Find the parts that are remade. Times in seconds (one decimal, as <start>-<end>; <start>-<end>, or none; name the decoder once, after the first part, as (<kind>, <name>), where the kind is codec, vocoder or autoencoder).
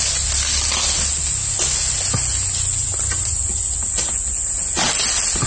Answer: none